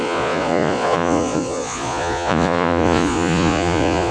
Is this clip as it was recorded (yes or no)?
no